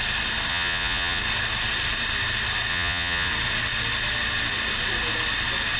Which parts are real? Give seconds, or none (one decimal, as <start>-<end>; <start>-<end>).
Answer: 0.0-0.5; 1.2-2.7; 3.3-5.8